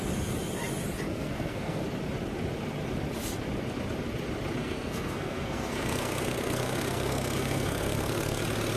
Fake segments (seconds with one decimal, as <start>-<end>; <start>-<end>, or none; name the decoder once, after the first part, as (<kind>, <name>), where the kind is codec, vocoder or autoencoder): 1.1-1.8 (codec, SNAC); 4.6-8.4